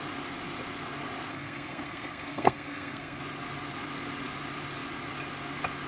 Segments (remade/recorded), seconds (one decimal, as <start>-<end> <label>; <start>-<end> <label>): 0.0-1.3 recorded; 1.3-3.2 remade; 3.2-5.9 recorded